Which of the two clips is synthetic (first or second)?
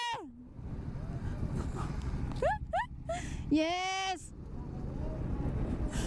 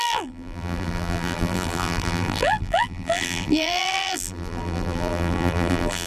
second